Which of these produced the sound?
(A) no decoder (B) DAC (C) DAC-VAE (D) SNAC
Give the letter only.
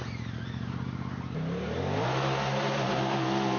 A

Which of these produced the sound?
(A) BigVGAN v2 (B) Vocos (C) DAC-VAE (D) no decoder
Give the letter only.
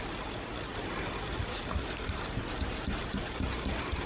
D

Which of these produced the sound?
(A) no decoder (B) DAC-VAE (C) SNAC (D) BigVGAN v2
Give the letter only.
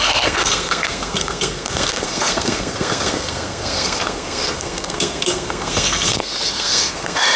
C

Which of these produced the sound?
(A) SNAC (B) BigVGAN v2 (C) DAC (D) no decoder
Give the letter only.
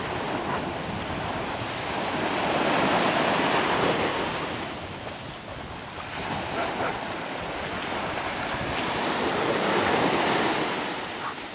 D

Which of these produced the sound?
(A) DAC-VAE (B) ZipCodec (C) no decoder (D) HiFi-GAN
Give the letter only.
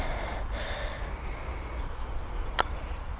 C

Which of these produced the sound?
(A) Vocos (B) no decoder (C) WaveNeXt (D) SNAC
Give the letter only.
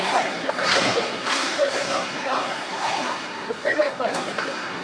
D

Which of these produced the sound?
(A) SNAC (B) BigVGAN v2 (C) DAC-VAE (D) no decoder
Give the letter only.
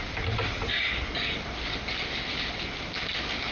D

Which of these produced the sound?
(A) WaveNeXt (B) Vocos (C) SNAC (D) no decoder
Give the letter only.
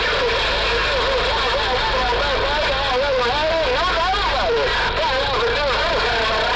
D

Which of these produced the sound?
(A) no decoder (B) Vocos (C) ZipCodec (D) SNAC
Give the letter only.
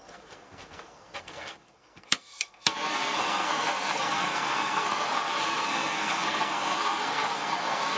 D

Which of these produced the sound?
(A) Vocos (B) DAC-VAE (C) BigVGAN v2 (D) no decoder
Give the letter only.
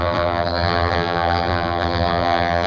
C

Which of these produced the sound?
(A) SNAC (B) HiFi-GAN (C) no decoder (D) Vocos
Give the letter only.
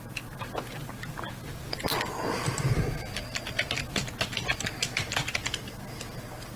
C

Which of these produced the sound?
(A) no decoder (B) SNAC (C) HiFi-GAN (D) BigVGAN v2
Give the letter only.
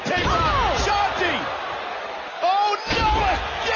A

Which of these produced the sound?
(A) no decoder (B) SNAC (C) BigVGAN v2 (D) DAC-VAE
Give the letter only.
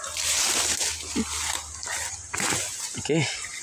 A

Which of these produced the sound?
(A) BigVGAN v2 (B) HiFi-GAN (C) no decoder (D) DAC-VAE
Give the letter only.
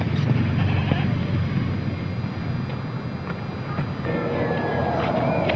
C